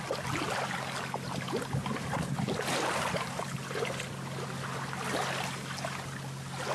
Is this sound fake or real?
real